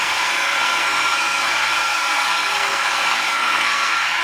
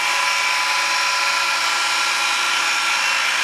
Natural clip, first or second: second